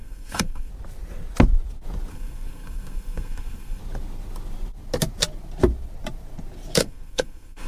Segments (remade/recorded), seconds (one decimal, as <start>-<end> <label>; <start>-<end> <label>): 0.0-0.7 remade; 0.7-2.1 recorded; 2.1-3.8 remade; 3.8-6.8 recorded; 6.8-7.7 remade